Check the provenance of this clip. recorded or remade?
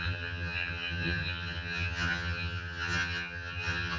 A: remade